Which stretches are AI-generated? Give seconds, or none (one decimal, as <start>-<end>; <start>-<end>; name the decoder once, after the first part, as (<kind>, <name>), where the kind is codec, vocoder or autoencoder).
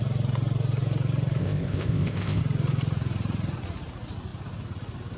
1.4-2.4 (codec, ZipCodec)